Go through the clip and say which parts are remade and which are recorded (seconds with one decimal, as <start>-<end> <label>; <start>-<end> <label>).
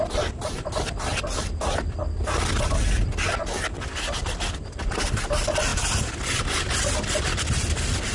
0.0-2.0 remade; 2.0-2.6 recorded; 2.6-3.4 remade; 3.4-3.9 recorded; 3.9-5.7 remade; 5.7-6.8 recorded; 6.8-8.1 remade